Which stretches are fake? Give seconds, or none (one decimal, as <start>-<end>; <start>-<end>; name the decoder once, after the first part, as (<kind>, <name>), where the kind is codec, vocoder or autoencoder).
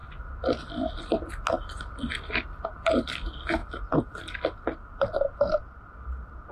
none